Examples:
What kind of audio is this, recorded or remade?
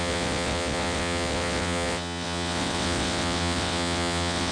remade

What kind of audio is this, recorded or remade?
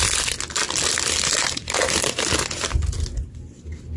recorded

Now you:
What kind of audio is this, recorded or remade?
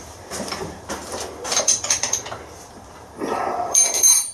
remade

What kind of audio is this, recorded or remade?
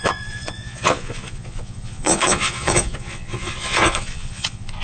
remade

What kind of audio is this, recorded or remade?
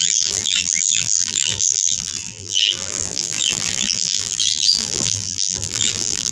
remade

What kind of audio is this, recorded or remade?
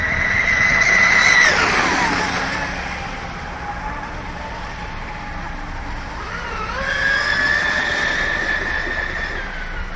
recorded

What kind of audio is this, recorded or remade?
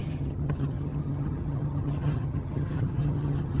remade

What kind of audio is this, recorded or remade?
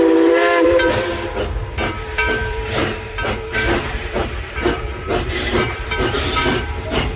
remade